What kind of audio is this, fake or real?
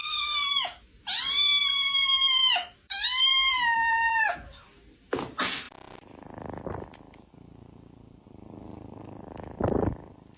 fake